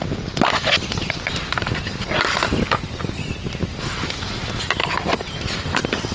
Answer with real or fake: real